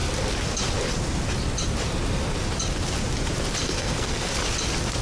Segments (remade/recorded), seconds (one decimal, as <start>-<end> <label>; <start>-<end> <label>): 0.0-3.6 recorded; 3.6-4.3 remade; 4.3-5.0 recorded

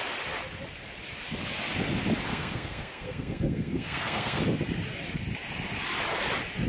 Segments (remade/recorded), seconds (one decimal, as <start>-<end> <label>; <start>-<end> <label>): 0.0-2.3 recorded; 2.3-4.4 remade; 4.4-6.7 recorded

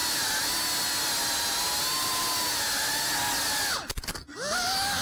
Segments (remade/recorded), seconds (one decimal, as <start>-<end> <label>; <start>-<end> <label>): 0.0-5.0 recorded

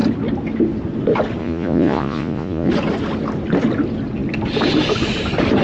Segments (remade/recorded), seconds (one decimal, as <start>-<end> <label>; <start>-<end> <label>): 0.0-1.4 recorded; 1.4-2.7 remade; 2.7-5.6 recorded

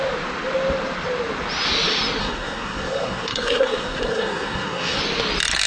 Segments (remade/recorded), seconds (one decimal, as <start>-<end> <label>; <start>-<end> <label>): 0.0-2.2 recorded; 2.2-5.0 remade; 5.0-5.7 recorded

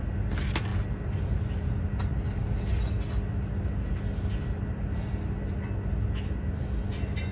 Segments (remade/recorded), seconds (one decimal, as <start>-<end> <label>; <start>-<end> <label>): 0.0-7.3 recorded